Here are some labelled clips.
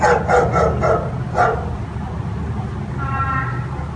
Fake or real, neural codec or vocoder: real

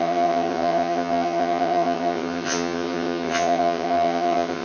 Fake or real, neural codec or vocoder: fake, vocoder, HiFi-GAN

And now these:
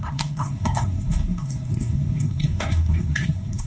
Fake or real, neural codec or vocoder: fake, codec, SNAC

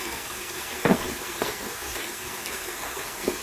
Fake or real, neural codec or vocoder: fake, codec, SNAC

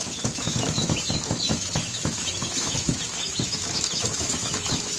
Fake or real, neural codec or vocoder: fake, autoencoder, DAC-VAE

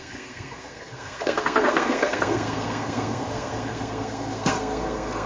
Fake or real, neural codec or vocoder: fake, codec, SNAC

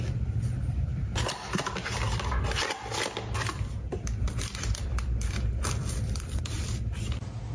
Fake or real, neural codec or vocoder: fake, vocoder, BigVGAN v2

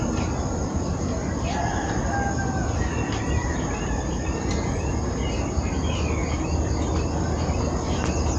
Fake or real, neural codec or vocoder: real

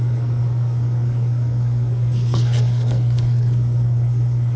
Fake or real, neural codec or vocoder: fake, codec, SNAC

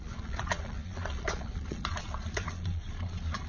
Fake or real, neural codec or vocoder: fake, vocoder, Vocos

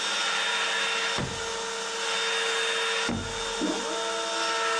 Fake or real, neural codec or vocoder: real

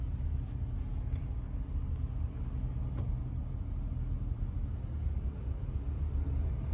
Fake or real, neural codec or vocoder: real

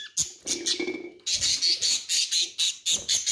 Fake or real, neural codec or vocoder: real